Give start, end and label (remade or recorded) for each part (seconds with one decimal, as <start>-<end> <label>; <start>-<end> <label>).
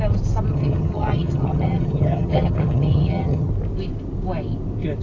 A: 0.0-0.5 recorded; 0.5-3.5 remade; 3.5-5.0 recorded